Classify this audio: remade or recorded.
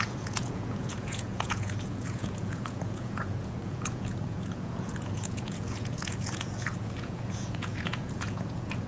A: remade